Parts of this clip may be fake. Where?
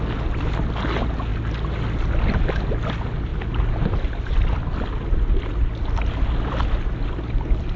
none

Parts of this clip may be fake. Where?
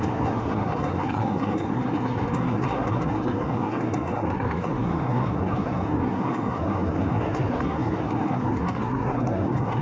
0.0-9.8 (codec, SNAC)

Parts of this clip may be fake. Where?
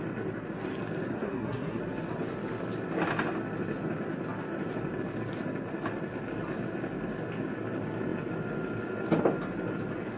1.1-1.8 (codec, SNAC)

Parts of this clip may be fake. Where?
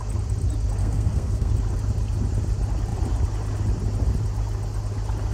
0.8-1.5 (codec, SNAC)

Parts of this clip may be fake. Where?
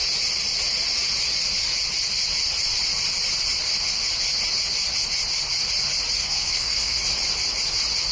6.2-7.0 (codec, SNAC)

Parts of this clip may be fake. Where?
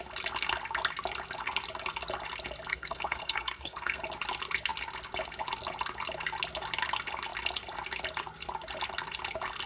2.7-4.0 (codec, SNAC)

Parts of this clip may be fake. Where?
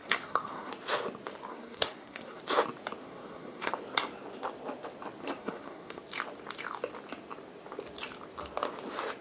0.0-0.7 (codec, SNAC); 1.5-2.4; 3.0-3.7; 5.2-6.0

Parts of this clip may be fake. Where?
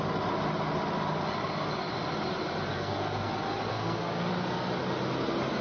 2.7-3.3 (codec, SNAC); 3.7-4.3